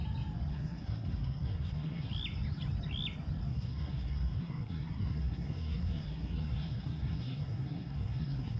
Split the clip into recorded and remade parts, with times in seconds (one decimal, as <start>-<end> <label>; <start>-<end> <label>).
0.0-0.5 recorded; 0.5-2.1 remade; 2.1-3.5 recorded; 3.5-8.6 remade